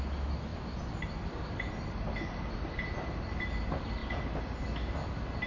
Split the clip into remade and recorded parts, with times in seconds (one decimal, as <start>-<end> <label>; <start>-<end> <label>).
0.0-5.5 recorded